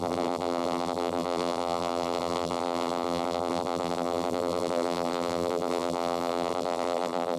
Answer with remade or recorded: remade